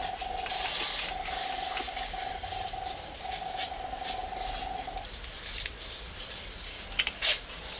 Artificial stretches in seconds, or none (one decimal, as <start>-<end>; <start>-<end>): none